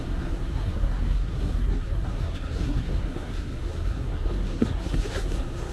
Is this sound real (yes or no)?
no